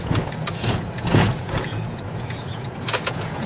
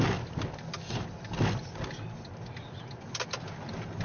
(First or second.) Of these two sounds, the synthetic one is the first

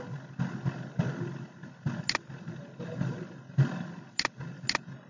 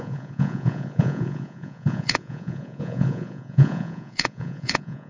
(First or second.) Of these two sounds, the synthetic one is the second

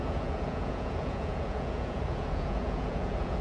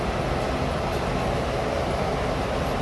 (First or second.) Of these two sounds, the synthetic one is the first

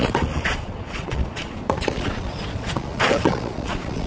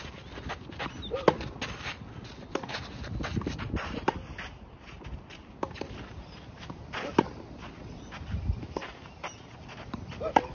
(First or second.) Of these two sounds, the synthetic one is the first